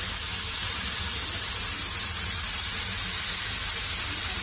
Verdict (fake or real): real